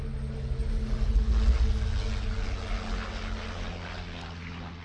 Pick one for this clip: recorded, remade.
recorded